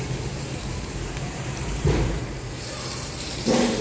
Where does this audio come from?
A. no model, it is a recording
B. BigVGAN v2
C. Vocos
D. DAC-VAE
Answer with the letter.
B